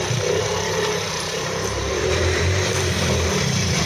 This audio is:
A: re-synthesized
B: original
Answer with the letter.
A